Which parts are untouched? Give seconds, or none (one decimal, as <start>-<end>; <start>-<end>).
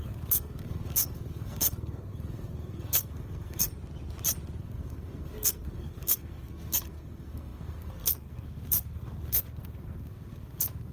3.7-4.6